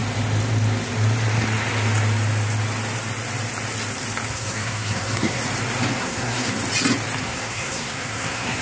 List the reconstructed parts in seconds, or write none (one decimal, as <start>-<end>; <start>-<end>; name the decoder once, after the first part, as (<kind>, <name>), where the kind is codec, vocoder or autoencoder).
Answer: 4.3-5.4 (codec, SNAC); 6.0-6.6; 7.2-8.6